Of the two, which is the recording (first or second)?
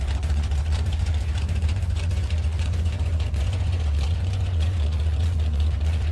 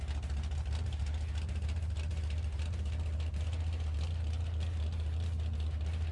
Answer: second